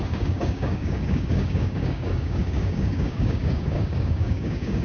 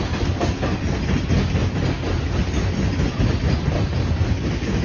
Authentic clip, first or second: second